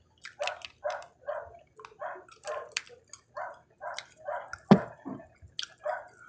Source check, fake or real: real